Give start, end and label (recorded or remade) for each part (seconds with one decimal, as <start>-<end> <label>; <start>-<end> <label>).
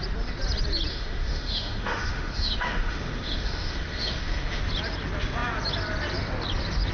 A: 0.0-0.9 recorded; 0.9-4.6 remade; 4.6-6.9 recorded